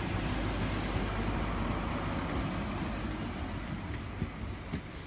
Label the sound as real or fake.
real